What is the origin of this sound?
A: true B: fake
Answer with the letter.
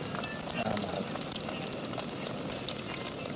A